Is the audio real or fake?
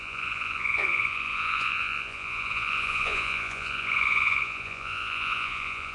fake